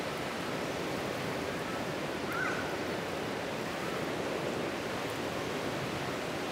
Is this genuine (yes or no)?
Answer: yes